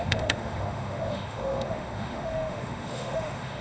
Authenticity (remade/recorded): remade